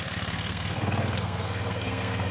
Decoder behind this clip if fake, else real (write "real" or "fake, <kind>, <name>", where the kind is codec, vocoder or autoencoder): fake, codec, SNAC